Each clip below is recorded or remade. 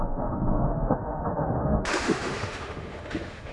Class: remade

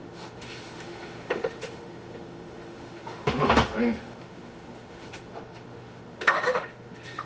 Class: remade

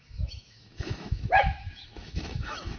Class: remade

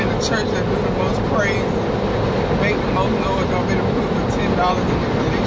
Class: recorded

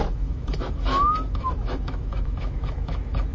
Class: remade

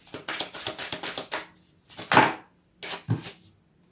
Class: recorded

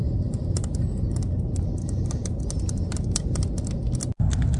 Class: recorded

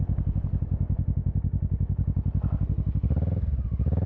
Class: recorded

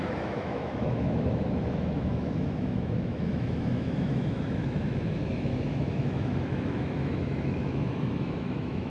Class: remade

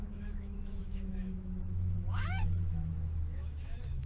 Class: remade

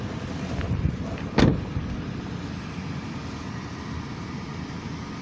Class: recorded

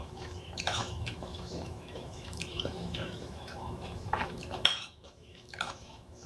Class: remade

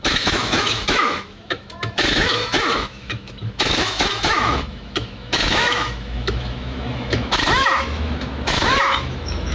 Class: remade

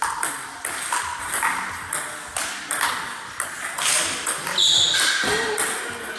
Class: recorded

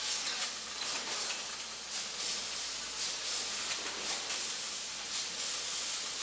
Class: recorded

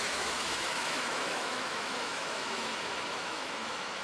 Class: remade